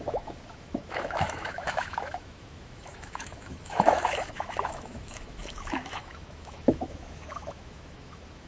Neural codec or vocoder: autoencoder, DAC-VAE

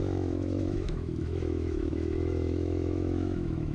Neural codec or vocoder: autoencoder, DAC-VAE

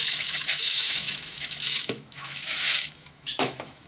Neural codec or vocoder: autoencoder, DAC-VAE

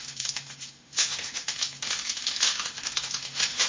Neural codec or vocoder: autoencoder, DAC-VAE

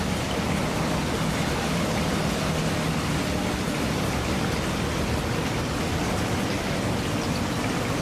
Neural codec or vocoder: none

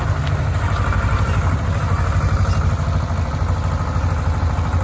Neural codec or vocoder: none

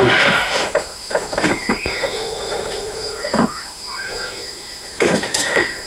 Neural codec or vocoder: autoencoder, DAC-VAE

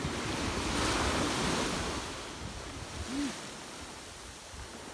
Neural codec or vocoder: none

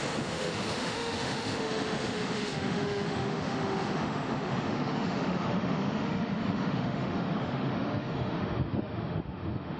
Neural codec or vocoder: autoencoder, DAC-VAE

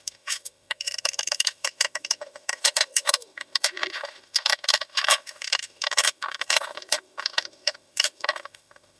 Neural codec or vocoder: autoencoder, DAC-VAE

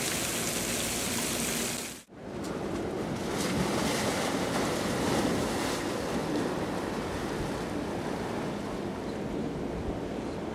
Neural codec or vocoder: none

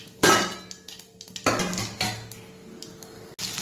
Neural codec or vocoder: none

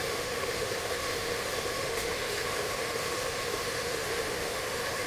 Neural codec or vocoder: autoencoder, DAC-VAE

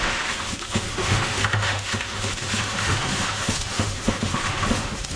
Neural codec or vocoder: autoencoder, DAC-VAE